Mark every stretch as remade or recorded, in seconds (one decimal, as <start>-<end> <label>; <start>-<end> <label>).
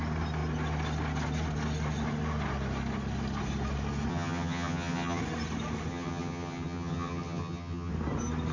0.0-4.1 recorded; 4.1-5.2 remade; 5.2-5.9 recorded; 5.9-7.9 remade; 7.9-8.5 recorded